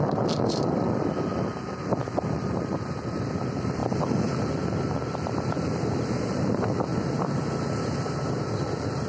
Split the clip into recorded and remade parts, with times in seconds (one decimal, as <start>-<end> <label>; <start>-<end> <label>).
0.0-6.9 remade; 6.9-8.3 recorded; 8.3-9.1 remade